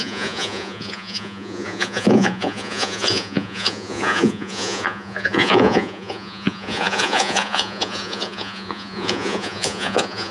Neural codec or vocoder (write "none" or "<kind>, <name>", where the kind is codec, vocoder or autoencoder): vocoder, Vocos